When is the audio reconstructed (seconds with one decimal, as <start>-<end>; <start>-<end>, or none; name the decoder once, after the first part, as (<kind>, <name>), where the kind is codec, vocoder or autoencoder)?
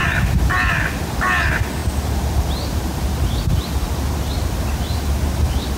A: none